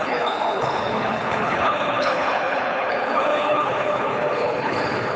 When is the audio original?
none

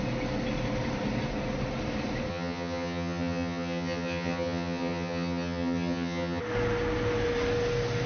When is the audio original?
0.0-2.3; 6.4-8.1